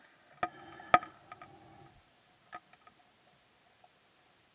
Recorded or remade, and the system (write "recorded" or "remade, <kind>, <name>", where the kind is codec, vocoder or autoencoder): recorded